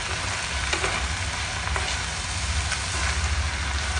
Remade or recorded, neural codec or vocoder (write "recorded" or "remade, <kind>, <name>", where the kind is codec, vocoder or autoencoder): recorded